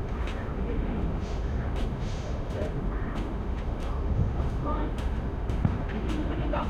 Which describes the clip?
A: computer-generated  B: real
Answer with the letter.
A